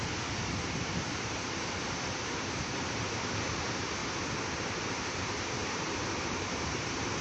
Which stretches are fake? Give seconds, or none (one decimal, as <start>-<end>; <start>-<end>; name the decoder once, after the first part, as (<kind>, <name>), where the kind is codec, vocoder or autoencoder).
0.0-4.0 (vocoder, BigVGAN v2); 4.6-7.2